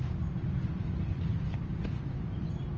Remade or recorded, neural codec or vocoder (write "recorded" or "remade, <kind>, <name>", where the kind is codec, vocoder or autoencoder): recorded